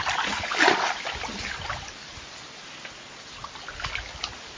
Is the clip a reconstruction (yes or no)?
no